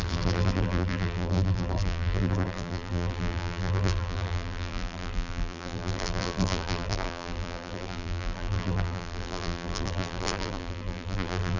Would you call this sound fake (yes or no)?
yes